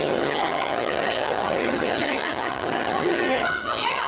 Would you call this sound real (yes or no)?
no